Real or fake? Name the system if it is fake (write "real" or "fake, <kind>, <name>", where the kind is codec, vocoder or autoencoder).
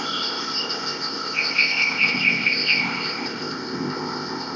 fake, codec, ZipCodec